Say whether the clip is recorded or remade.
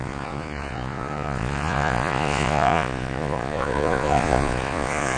remade